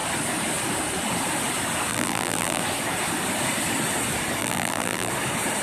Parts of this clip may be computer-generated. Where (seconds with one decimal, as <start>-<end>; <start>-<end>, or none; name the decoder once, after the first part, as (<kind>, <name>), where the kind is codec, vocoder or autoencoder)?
1.9-2.6 (vocoder, BigVGAN v2); 4.4-5.1